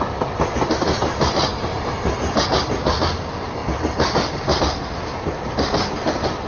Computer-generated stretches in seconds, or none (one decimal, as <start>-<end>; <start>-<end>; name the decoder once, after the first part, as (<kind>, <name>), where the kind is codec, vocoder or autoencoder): none